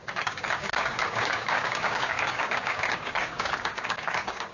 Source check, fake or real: fake